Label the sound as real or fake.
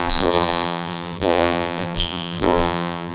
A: fake